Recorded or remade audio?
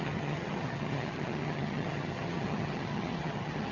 remade